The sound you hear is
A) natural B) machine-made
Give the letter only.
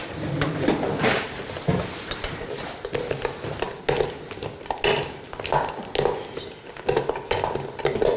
A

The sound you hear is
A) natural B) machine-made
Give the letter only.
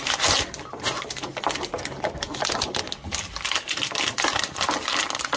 A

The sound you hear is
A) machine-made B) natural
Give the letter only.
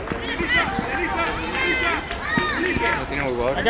B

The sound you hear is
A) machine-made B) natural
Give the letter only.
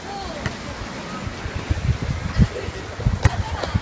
B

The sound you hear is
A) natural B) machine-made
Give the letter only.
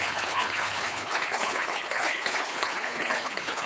B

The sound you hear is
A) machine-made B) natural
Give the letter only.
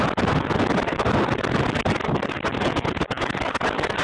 B